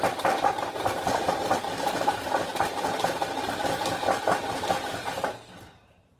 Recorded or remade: recorded